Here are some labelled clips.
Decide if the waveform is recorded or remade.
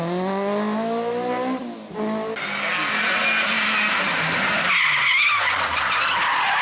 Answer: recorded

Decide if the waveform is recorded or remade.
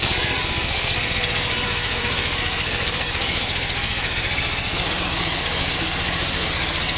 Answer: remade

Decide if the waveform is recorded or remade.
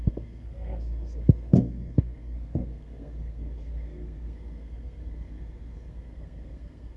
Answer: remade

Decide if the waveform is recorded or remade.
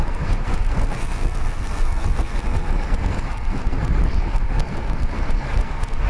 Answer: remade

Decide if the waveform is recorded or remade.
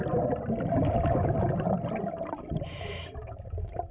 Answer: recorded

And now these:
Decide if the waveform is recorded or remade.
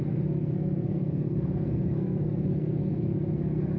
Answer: remade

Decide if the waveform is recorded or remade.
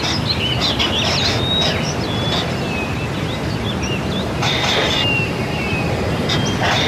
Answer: recorded